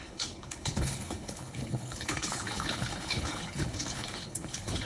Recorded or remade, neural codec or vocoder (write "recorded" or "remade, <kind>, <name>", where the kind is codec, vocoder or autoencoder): remade, codec, HILCodec